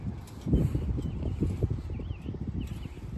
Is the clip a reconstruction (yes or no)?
no